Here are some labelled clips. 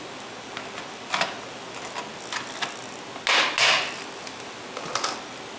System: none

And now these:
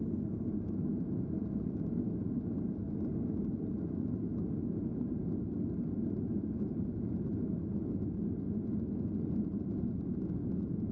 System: none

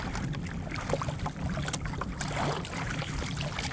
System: none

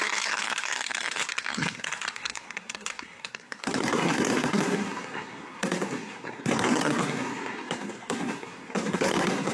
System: codec, SNAC